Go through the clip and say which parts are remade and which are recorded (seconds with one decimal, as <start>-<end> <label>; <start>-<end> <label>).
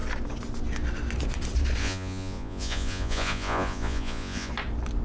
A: 0.0-1.8 recorded; 1.8-4.5 remade; 4.5-5.0 recorded